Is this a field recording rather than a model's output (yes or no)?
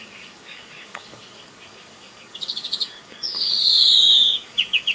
no